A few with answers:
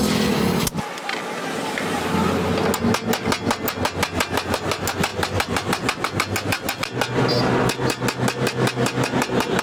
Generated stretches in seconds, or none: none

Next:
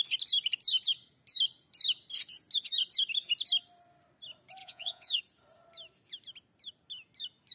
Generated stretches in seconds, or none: 4.6-5.2 (vocoder, Vocos)

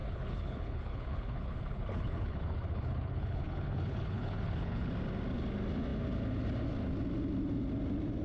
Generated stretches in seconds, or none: 0.0-4.9 (codec, HILCodec)

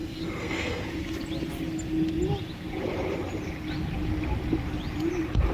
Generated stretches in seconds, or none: 0.0-0.8 (codec, SNAC)

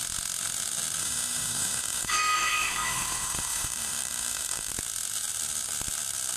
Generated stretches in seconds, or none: 1.0-4.7 (autoencoder, DAC-VAE)

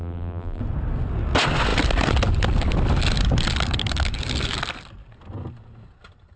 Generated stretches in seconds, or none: 0.0-0.6 (vocoder, BigVGAN v2)